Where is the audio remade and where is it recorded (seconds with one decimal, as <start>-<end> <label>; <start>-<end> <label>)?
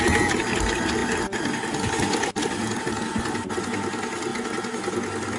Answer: 0.0-5.4 recorded